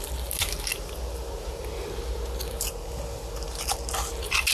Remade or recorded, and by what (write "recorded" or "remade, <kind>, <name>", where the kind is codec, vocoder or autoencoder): recorded